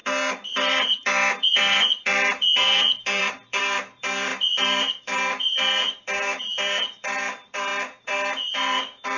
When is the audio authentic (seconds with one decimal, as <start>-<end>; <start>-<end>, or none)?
none